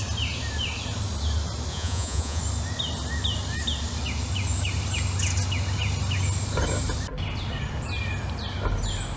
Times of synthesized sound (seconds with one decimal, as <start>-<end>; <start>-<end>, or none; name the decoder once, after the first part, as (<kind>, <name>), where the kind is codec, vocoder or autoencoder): 1.7-2.4 (vocoder, Vocos)